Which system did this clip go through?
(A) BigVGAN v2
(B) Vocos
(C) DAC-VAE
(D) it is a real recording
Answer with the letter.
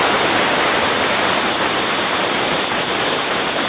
D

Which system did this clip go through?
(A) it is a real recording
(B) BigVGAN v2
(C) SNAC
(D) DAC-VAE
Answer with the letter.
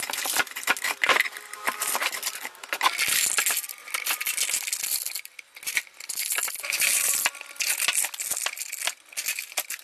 A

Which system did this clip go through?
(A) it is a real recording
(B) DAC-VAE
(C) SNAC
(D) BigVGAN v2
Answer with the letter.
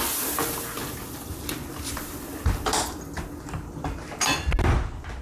A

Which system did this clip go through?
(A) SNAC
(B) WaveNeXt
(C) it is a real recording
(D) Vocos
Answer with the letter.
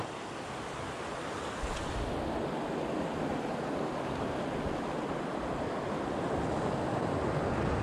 C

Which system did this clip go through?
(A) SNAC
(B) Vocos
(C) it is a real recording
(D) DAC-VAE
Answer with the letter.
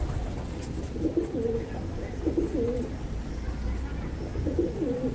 C